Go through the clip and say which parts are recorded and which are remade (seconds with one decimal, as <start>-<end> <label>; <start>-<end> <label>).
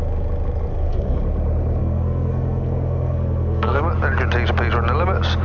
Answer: 0.0-0.7 recorded; 0.7-1.2 remade; 1.2-1.8 recorded; 1.8-3.8 remade; 3.8-5.4 recorded